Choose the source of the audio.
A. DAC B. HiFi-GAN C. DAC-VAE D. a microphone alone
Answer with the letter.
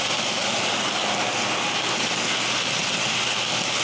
D